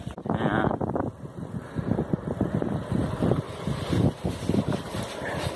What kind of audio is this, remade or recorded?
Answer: recorded